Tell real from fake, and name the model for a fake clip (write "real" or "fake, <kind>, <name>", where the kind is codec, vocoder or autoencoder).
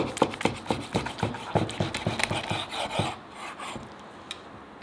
real